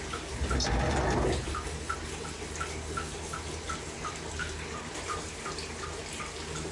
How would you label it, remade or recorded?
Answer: recorded